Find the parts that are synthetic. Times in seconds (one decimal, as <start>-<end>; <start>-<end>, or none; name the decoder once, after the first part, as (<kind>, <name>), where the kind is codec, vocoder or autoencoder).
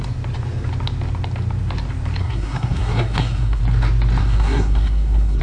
2.2-3.6 (codec, SNAC); 4.2-5.4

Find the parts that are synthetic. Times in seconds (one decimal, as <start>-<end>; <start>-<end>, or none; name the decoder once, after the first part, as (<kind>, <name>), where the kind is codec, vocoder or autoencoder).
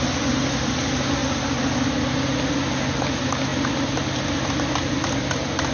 none